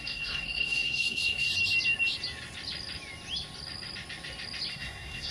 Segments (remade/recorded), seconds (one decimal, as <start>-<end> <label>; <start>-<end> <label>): 0.0-1.5 remade; 1.5-4.7 recorded; 4.7-5.3 remade